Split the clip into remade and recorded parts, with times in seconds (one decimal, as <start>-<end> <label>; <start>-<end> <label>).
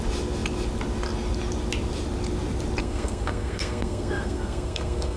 0.0-2.8 recorded; 2.8-5.2 remade